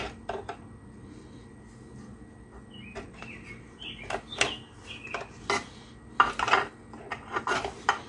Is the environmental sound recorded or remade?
recorded